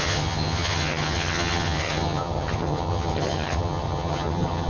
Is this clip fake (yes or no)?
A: yes